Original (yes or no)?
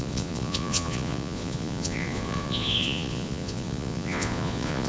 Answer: no